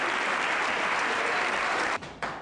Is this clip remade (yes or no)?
no